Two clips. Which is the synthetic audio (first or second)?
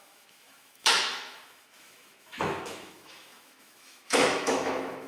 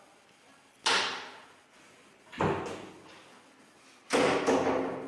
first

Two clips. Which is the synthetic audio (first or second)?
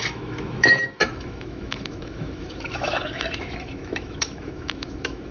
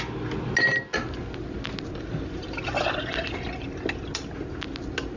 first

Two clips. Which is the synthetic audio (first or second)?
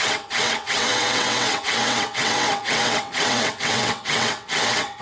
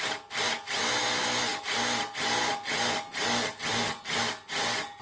first